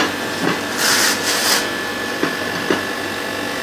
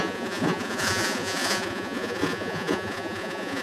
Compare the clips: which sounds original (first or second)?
first